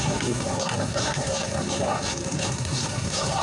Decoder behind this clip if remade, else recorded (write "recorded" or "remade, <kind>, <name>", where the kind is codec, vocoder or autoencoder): remade, codec, SNAC